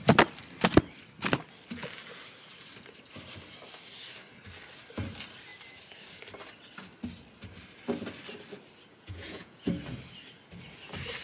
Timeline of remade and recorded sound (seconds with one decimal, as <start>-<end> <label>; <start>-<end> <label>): 0.0-8.9 recorded; 8.9-9.7 remade; 9.7-11.2 recorded